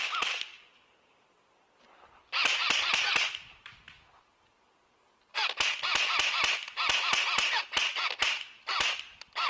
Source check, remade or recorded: recorded